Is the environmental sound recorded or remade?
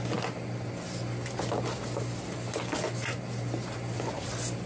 recorded